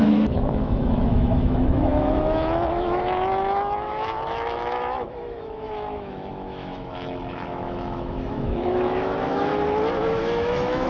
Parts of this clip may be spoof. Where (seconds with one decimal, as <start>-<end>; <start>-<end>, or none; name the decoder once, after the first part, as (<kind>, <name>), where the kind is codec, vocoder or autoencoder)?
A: 0.0-9.5 (autoencoder, DAC-VAE); 10.2-10.9